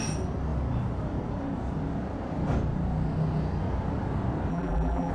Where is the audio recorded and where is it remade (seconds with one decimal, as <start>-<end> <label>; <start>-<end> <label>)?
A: 0.0-4.5 recorded; 4.5-5.1 remade